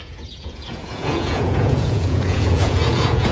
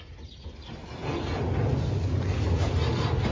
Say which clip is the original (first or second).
second